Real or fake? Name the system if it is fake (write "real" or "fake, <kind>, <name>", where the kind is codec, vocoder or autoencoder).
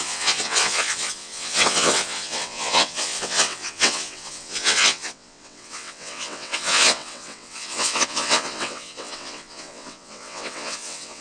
fake, vocoder, WaveNeXt